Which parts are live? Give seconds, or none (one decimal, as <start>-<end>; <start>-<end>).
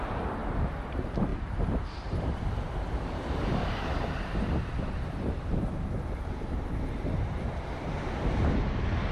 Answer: 0.0-1.3; 3.2-3.6; 8.4-9.1